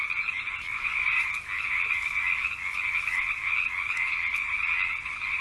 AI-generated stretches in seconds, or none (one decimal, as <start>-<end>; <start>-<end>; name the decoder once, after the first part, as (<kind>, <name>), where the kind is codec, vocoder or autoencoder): 0.7-1.3 (vocoder, Vocos)